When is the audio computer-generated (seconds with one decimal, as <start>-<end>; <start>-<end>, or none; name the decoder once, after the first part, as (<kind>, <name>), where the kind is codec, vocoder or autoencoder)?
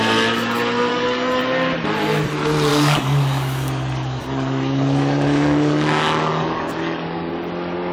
0.9-1.4 (codec, DAC); 2.7-7.3